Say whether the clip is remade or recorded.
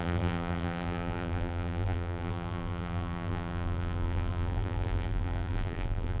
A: remade